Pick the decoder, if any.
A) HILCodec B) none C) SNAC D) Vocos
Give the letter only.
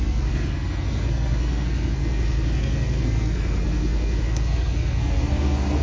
C